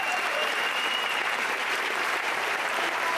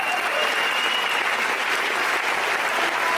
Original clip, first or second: second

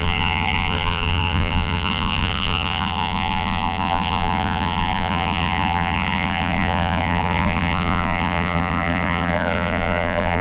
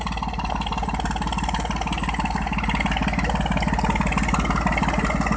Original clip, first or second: second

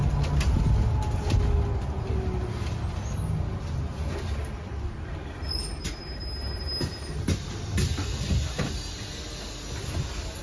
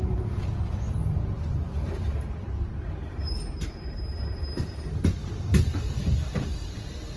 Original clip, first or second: first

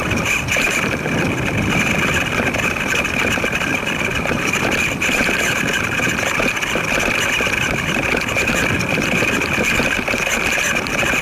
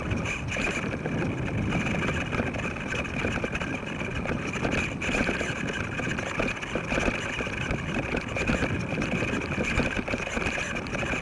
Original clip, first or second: second